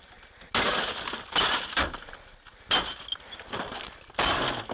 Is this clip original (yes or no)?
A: yes